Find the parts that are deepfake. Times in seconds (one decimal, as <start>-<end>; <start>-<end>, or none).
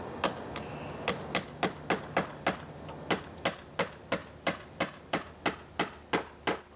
4.2-5.3